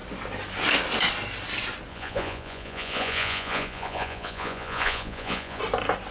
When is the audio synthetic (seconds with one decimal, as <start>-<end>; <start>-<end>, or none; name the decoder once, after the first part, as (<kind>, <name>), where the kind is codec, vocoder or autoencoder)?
1.9-5.6 (vocoder, Vocos)